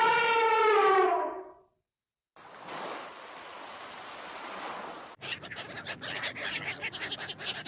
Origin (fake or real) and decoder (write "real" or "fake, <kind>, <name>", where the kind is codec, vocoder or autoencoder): real